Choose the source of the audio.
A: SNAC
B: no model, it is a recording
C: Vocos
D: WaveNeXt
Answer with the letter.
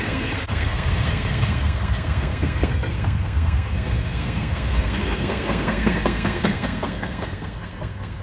A